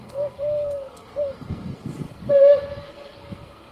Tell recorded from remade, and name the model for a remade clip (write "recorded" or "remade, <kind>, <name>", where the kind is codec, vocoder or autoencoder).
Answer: remade, codec, SNAC